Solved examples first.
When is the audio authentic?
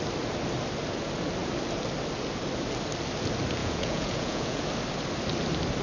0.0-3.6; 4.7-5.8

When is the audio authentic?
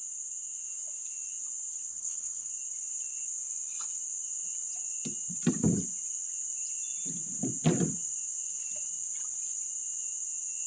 0.0-1.9; 2.5-10.7